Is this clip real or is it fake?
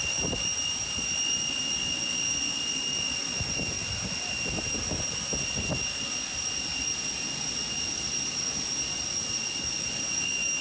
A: real